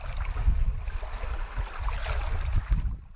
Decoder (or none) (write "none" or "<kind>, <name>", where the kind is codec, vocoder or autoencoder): none